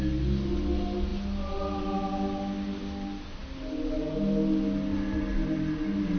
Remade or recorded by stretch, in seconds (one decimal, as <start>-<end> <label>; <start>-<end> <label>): 0.0-6.2 recorded

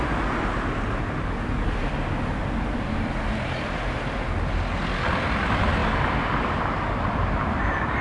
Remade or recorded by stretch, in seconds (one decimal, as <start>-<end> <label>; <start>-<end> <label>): 0.0-8.0 recorded

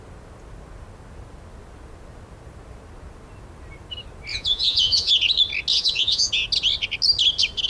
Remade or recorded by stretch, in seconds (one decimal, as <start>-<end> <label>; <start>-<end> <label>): 0.0-4.3 recorded; 4.3-5.1 remade; 5.1-5.7 recorded; 5.7-6.3 remade; 6.3-7.7 recorded